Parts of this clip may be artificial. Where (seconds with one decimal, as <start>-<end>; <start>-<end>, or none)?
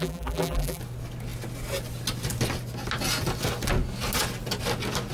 0.0-0.8